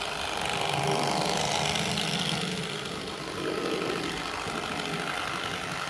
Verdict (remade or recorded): recorded